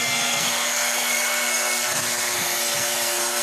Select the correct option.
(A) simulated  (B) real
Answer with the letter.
A